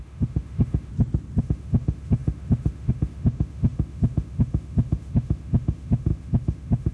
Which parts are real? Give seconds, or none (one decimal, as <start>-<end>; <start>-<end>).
0.9-1.4